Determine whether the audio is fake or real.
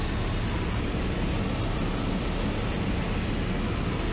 real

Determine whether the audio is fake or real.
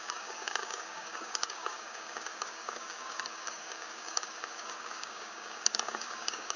fake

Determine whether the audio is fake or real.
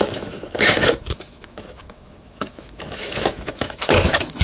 fake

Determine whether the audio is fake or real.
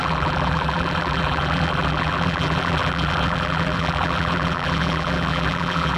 fake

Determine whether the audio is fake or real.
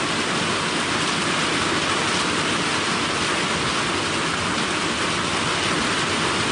real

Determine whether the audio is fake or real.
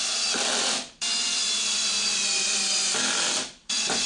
fake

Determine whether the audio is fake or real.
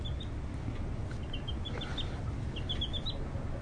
real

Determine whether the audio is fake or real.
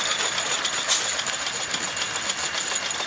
real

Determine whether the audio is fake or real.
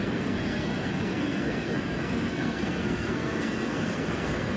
fake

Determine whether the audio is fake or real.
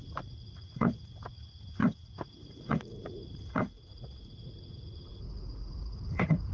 fake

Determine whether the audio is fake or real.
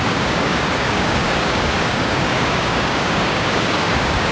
fake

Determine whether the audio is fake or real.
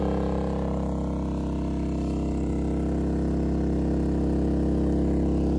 real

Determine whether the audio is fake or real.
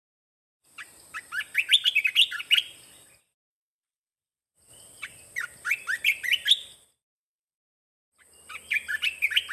real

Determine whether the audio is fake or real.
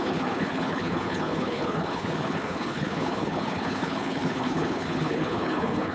fake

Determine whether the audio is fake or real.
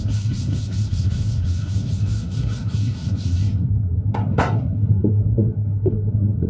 fake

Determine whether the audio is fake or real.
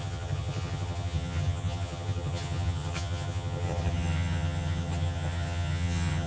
fake